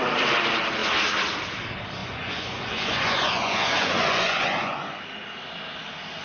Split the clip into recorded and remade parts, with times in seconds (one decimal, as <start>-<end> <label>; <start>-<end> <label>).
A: 0.0-2.0 recorded; 2.0-5.0 remade; 5.0-6.2 recorded